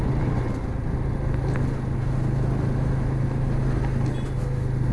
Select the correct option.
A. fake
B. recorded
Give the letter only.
B